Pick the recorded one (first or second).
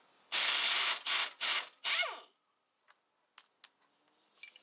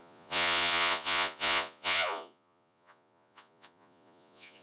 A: first